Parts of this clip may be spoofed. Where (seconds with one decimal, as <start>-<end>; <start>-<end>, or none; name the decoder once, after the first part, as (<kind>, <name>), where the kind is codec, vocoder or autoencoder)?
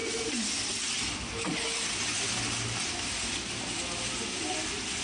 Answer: none